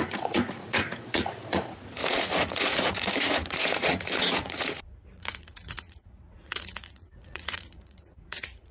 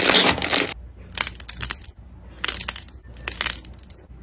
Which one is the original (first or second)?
second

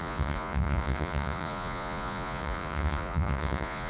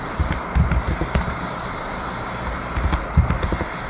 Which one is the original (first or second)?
second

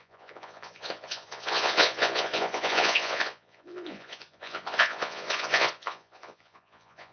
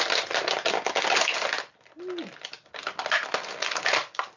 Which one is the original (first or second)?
second